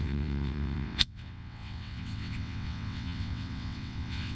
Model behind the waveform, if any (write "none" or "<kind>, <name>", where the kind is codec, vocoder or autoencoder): vocoder, WaveNeXt